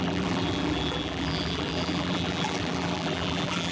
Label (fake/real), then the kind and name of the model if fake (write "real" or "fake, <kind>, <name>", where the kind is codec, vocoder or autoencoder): fake, vocoder, BigVGAN v2